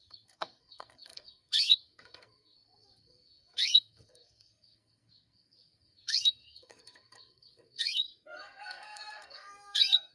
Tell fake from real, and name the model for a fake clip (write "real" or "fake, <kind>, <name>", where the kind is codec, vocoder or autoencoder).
fake, codec, SNAC